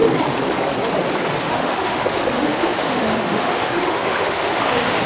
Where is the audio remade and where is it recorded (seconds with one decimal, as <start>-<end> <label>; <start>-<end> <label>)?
0.0-1.4 recorded; 1.4-5.1 remade